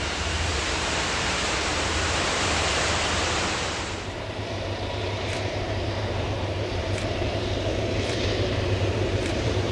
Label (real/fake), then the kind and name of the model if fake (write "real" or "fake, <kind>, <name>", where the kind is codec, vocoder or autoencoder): fake, vocoder, BigVGAN v2